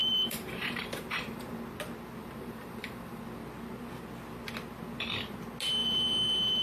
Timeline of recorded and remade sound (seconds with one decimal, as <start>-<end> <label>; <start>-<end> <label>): 0.0-1.6 remade; 1.6-2.2 recorded; 2.2-3.2 remade; 3.2-6.6 recorded